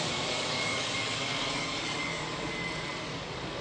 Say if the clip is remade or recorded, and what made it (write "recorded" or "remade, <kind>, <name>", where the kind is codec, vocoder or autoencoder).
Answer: remade, codec, DAC